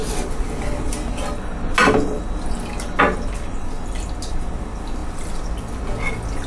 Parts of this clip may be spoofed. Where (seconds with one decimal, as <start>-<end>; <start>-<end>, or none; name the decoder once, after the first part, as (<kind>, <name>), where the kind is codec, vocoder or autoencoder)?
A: none